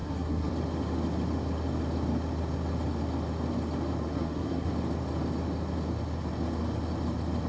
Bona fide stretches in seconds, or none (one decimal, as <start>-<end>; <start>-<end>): 0.5-4.0; 4.7-7.5